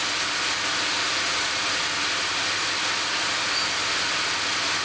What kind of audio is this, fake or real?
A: real